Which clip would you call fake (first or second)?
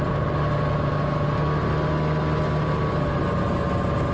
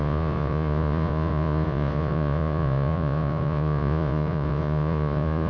second